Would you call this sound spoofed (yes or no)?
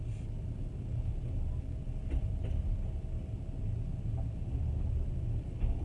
no